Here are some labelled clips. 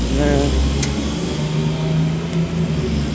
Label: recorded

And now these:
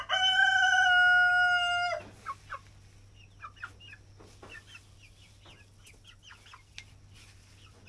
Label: recorded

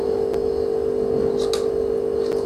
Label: recorded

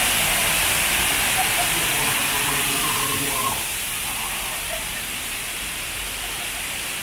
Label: remade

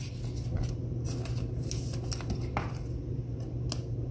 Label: recorded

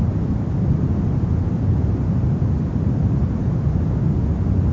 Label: recorded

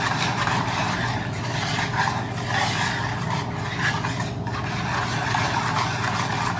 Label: recorded